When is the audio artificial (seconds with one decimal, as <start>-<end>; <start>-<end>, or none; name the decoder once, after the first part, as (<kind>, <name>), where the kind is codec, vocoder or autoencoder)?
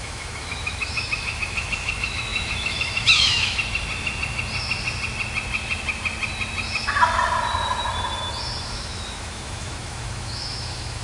0.0-3.6 (autoencoder, DAC-VAE); 8.6-11.0